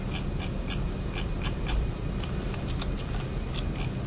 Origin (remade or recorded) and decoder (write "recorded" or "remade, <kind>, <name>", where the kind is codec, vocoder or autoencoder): recorded